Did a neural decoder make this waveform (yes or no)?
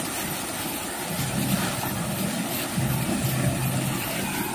no